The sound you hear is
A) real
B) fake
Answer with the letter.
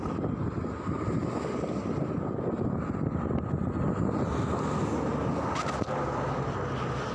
A